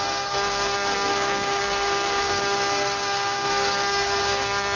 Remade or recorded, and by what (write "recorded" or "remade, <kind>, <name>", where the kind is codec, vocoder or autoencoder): remade, codec, SNAC